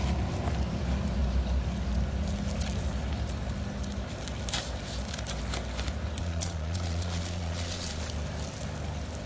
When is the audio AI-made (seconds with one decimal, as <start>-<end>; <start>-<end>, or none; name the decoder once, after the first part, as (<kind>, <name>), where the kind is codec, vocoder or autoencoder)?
6.2-8.0 (vocoder, Vocos)